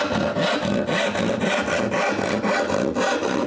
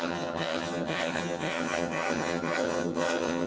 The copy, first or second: second